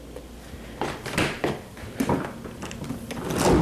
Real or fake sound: real